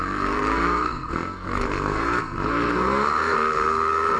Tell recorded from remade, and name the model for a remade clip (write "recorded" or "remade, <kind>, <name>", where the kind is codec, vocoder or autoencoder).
remade, codec, SNAC